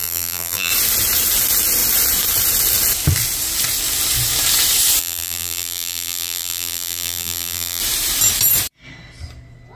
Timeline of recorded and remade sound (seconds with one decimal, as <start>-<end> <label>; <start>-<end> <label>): 0.0-0.7 remade; 0.7-5.0 recorded; 5.0-7.8 remade; 7.8-9.8 recorded